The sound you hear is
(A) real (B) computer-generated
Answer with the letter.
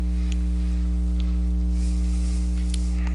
A